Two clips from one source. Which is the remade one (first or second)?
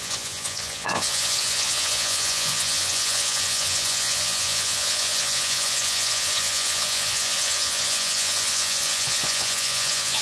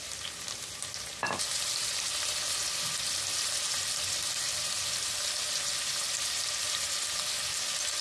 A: first